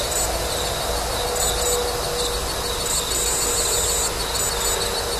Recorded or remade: recorded